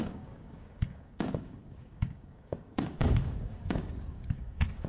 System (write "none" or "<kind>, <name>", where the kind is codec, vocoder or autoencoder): codec, DAC